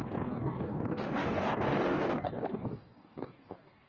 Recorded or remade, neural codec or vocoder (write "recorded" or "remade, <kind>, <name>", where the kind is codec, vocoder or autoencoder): remade, codec, DAC